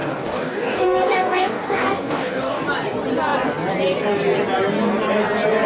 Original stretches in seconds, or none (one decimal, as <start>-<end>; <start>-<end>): 2.6-5.7